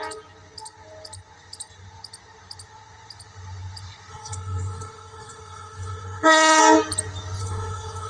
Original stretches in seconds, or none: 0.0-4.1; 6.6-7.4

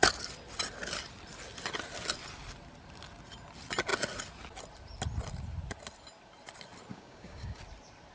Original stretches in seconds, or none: 0.0-6.9; 7.6-8.1

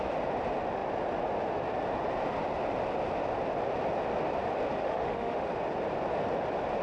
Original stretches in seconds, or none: 0.0-4.8; 5.5-6.8

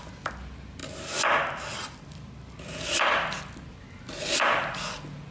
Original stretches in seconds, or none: 0.0-5.3

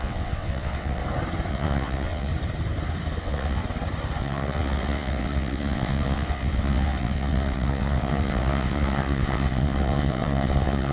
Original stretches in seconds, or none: 1.0-1.5; 2.3-3.2; 3.6-4.2

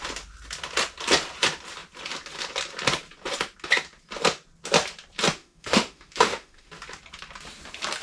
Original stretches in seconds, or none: 0.0-5.4; 6.7-8.0